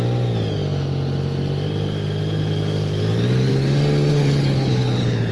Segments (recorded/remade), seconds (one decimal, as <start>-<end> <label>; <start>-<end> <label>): 0.0-4.1 recorded; 4.1-5.3 remade